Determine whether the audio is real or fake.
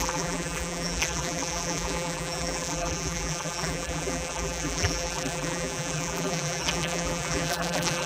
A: fake